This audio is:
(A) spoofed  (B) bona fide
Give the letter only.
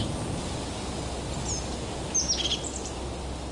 B